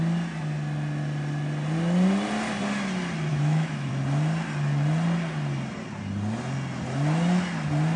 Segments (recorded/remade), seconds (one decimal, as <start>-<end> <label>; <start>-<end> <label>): 0.0-3.3 recorded; 3.3-3.9 remade; 3.9-8.0 recorded